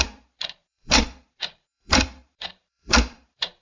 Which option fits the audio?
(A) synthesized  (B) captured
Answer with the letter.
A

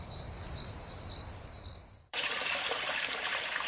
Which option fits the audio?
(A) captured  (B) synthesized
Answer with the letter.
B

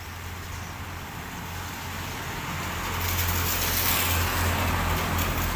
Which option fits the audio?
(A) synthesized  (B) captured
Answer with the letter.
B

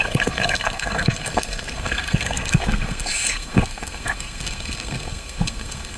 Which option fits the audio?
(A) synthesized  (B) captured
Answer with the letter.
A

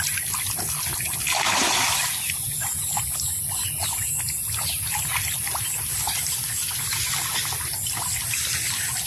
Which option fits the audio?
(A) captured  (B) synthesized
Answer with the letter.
A